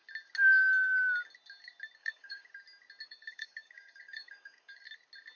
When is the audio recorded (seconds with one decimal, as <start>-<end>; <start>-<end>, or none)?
0.0-2.0; 2.5-3.0; 4.8-5.4